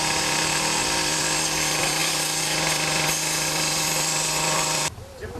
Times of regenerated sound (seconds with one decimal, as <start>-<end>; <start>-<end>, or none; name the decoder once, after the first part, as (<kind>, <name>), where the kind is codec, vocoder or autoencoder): 0.0-5.4 (vocoder, BigVGAN v2)